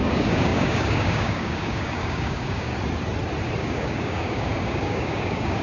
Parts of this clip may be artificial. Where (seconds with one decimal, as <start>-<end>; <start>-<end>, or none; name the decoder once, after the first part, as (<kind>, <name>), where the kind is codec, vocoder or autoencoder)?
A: 0.0-2.7 (codec, DAC); 3.6-5.6